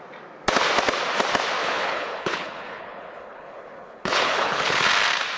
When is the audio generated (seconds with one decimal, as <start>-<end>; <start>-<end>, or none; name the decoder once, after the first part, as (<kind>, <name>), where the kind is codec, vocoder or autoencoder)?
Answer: 1.6-4.8 (codec, HILCodec)